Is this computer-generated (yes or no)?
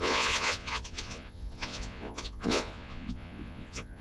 yes